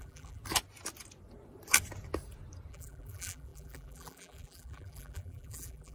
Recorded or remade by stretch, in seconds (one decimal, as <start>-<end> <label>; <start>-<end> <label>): 0.0-0.4 remade; 0.4-2.7 recorded; 2.7-5.9 remade

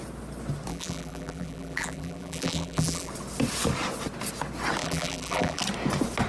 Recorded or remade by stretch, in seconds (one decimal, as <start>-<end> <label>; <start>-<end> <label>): 0.0-0.7 recorded; 0.7-3.1 remade; 3.1-4.8 recorded; 4.8-5.6 remade; 5.6-6.3 recorded

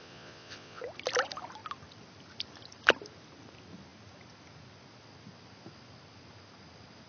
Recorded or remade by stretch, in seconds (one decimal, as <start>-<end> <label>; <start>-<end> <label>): 0.0-0.8 remade; 0.8-7.1 recorded

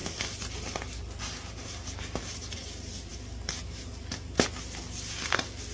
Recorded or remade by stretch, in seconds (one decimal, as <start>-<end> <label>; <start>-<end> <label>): 0.0-5.7 recorded

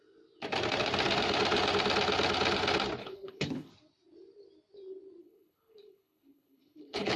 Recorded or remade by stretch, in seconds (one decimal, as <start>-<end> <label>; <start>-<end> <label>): 0.0-3.0 recorded; 3.0-3.7 remade; 3.7-5.2 recorded; 5.2-7.2 remade

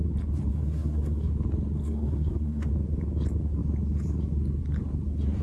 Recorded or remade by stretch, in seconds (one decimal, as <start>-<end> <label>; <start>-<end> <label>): 0.0-0.5 recorded; 0.5-1.3 remade; 1.3-1.8 recorded; 1.8-2.7 remade; 2.7-5.4 recorded

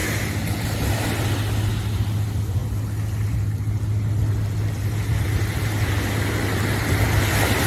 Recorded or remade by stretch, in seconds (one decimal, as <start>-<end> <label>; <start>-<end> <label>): 0.0-7.7 recorded

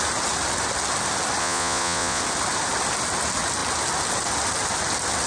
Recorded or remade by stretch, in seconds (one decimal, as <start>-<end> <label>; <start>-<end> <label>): 0.0-1.4 recorded; 1.4-2.2 remade; 2.2-5.3 recorded